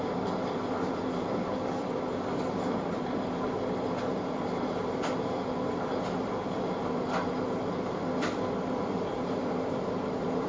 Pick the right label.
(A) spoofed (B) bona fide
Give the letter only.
A